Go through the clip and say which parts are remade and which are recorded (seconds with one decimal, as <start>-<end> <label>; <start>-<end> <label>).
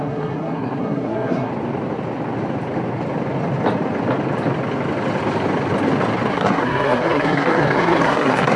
0.0-1.5 remade; 1.5-6.3 recorded; 6.3-8.6 remade